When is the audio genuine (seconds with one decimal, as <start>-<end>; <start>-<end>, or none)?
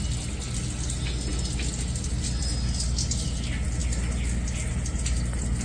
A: 0.0-5.6